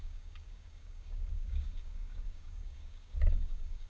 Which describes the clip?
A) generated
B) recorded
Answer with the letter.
A